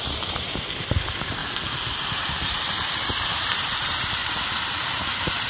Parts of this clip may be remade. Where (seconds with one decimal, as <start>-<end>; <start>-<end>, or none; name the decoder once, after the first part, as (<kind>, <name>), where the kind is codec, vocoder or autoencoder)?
0.0-1.4 (vocoder, BigVGAN v2); 2.1-5.5